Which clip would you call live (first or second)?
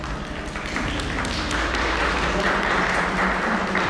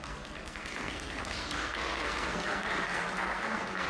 first